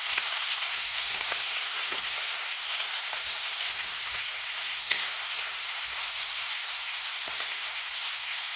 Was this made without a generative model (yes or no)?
no